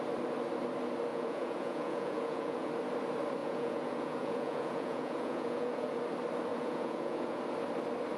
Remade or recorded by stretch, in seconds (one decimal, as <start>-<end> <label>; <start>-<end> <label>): 0.0-1.1 recorded; 1.1-2.7 remade; 2.7-3.4 recorded; 3.4-6.0 remade; 6.0-6.5 recorded; 6.5-7.4 remade; 7.4-8.2 recorded